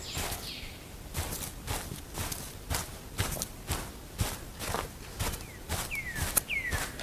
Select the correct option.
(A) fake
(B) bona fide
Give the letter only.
B